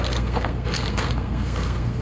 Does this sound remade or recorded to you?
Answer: remade